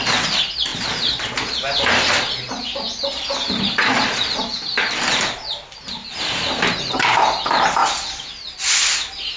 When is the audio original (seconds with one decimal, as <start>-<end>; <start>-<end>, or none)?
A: 0.0-9.4

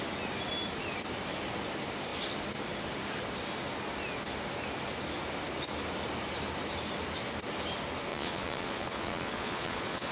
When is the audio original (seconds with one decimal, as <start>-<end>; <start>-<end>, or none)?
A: 0.0-8.1

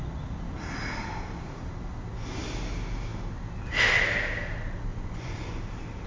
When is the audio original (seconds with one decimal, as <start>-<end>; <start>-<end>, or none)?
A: 0.0-4.9; 5.6-6.1